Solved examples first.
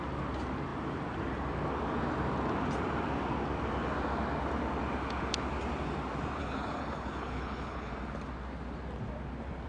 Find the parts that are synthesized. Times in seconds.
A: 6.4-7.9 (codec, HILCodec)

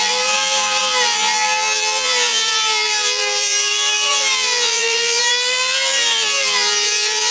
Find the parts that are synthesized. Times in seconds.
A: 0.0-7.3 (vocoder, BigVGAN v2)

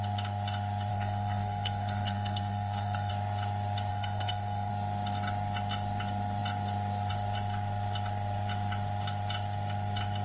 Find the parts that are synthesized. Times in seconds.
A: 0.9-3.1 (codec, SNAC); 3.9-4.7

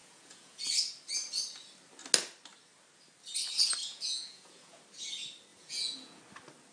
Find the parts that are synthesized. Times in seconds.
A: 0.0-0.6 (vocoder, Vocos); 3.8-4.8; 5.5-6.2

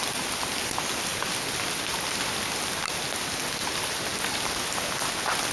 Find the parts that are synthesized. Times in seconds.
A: none

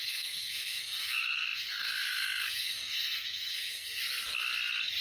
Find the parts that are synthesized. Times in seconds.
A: 0.0-4.0 (codec, SNAC)

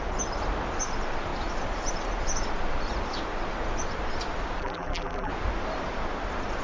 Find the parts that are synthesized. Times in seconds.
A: 4.6-5.3 (vocoder, BigVGAN v2)

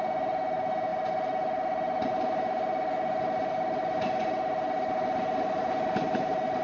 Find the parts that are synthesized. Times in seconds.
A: none